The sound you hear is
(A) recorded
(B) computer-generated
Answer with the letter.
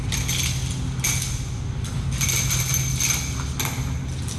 A